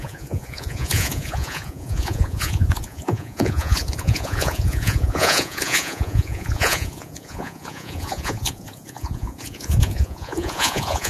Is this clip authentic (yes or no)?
no